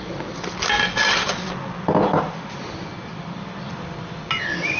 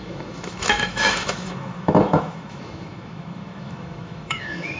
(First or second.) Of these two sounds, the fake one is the second